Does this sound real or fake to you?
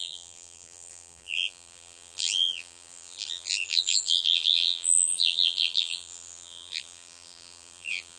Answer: fake